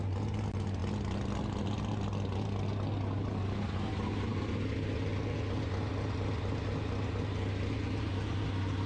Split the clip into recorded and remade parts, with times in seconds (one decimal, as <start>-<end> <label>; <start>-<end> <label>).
0.0-8.9 recorded